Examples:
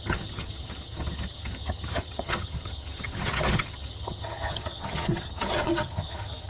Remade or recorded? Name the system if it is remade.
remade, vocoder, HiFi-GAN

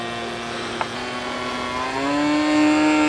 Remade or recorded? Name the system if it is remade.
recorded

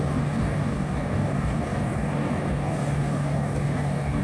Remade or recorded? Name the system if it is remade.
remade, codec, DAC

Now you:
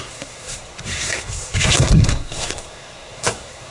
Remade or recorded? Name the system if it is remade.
remade, codec, SNAC